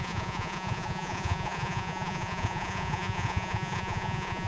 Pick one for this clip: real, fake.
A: fake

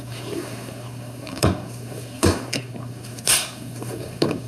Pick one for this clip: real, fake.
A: fake